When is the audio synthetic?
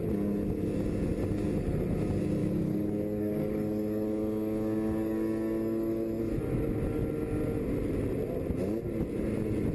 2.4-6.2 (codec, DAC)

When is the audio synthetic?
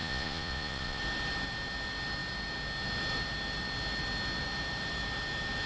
0.0-1.0 (vocoder, Vocos)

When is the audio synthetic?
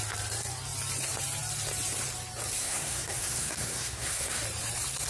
2.6-4.4 (codec, SNAC)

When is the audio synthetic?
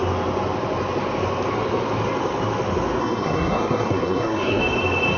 3.0-4.6 (codec, SNAC)